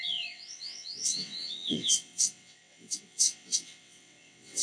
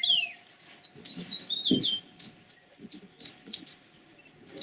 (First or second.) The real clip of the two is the second